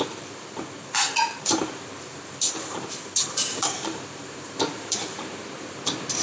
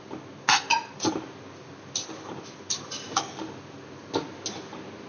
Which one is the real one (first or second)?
second